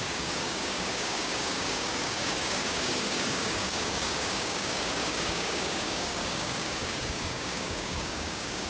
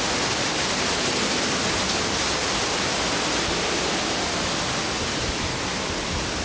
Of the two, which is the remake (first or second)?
first